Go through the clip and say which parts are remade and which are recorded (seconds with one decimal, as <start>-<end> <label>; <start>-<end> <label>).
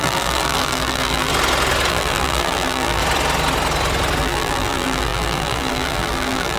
0.0-1.3 remade; 1.3-1.9 recorded; 1.9-3.0 remade; 3.0-4.2 recorded; 4.2-6.6 remade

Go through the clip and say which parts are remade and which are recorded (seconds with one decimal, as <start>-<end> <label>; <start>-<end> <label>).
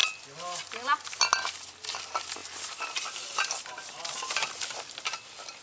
0.0-2.4 recorded; 2.4-5.0 remade; 5.0-5.6 recorded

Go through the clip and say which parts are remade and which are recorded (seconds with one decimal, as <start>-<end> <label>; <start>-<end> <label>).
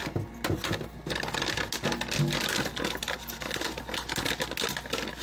0.0-3.0 recorded; 3.0-4.1 remade; 4.1-5.2 recorded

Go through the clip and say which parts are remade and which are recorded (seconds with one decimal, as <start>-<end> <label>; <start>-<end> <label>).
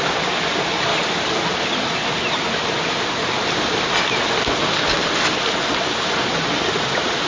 0.0-7.3 recorded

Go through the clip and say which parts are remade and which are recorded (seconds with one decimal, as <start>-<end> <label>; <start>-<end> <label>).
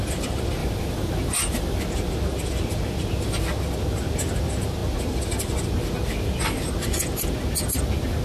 0.0-0.6 recorded; 0.6-1.8 remade; 1.8-8.2 recorded